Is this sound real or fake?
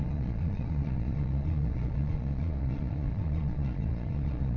fake